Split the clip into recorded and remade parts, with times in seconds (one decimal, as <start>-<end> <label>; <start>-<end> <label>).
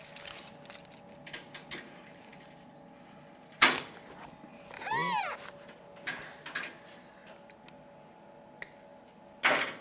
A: 0.0-9.8 recorded